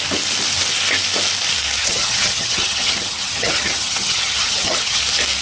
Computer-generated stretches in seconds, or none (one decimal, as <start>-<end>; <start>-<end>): 1.8-5.0